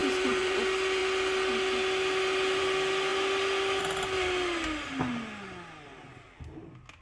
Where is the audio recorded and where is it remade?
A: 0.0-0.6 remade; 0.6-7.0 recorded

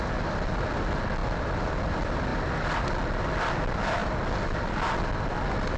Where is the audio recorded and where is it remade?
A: 0.0-2.3 recorded; 2.3-3.1 remade; 3.1-5.8 recorded

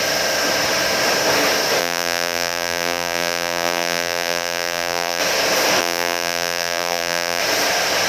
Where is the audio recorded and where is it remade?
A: 0.0-1.8 recorded; 1.8-5.2 remade; 5.2-5.8 recorded; 5.8-7.4 remade; 7.4-8.1 recorded

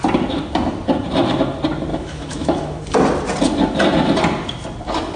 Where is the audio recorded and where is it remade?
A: 0.0-1.9 recorded; 1.9-2.8 remade; 2.8-5.2 recorded

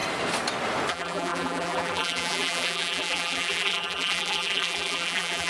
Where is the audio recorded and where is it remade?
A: 0.0-0.9 recorded; 0.9-5.5 remade

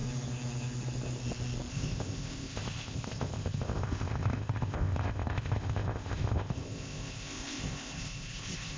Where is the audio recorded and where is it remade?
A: 0.0-1.7 recorded; 1.7-8.8 remade